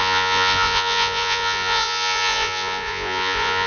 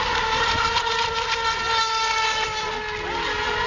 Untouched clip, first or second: second